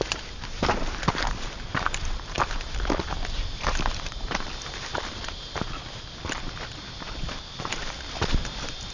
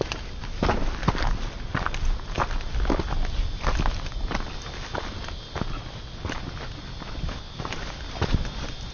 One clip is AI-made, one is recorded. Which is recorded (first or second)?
second